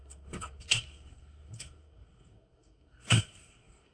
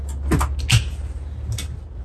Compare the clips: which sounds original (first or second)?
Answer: second